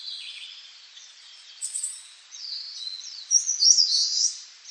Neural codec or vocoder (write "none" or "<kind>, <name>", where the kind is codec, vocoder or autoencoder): vocoder, Vocos